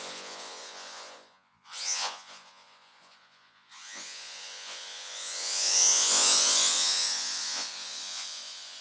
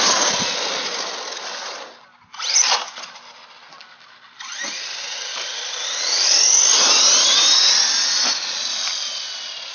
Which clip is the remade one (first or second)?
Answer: first